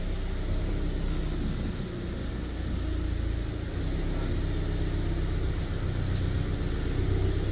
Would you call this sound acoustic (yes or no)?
yes